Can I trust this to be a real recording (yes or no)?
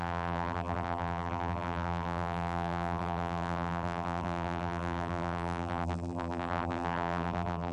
no